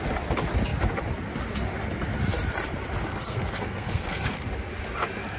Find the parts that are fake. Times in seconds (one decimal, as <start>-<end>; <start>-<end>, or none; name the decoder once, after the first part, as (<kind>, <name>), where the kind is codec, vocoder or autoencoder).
3.1-4.5 (codec, SNAC)